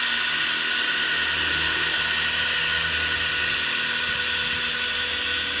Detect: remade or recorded recorded